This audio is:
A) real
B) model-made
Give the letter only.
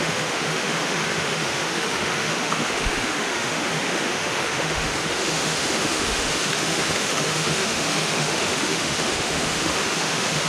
B